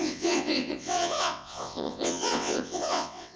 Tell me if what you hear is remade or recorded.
remade